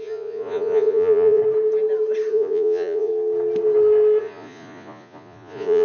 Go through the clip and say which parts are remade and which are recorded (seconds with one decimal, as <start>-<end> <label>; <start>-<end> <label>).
0.0-1.4 remade; 1.4-2.3 recorded; 2.3-3.1 remade; 3.1-4.2 recorded; 4.2-5.8 remade

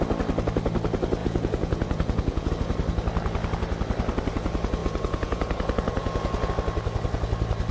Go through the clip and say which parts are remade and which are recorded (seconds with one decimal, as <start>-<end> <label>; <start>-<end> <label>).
0.0-1.2 recorded; 1.2-2.5 remade; 2.5-4.8 recorded; 4.8-6.5 remade; 6.5-7.7 recorded

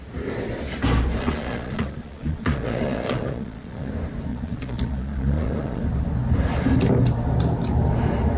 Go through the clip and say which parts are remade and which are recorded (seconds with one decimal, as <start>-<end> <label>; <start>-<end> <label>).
0.0-1.2 recorded; 1.2-3.9 remade; 3.9-4.3 recorded; 4.3-5.8 remade; 5.8-8.4 recorded

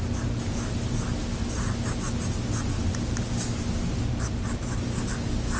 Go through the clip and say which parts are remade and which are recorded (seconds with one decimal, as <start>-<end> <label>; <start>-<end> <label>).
0.0-5.6 recorded

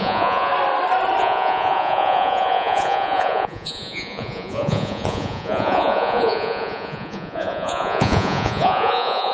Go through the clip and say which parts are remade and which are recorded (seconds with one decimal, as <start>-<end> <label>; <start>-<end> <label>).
0.0-0.5 remade; 0.5-1.2 recorded; 1.2-9.3 remade

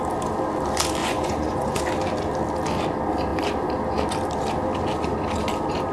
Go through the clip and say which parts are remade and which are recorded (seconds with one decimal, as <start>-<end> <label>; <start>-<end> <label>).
0.0-1.0 recorded; 1.0-1.8 remade; 1.8-5.9 recorded